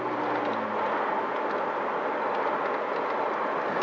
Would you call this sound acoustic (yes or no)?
yes